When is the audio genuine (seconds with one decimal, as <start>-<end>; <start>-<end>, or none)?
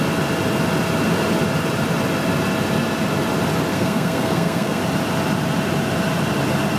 0.0-3.7; 4.8-6.8